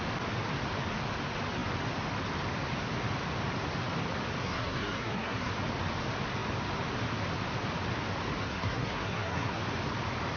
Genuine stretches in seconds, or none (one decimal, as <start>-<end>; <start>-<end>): 0.0-4.4; 5.5-8.5; 9.6-10.4